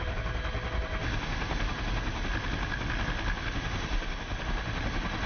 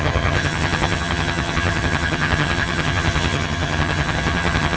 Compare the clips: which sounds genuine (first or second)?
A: first